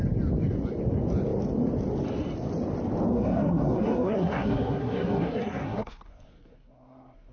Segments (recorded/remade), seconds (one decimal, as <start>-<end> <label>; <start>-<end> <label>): 0.0-3.1 recorded; 3.1-7.3 remade